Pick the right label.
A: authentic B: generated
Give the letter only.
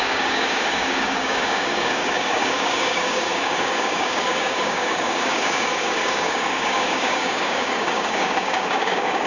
B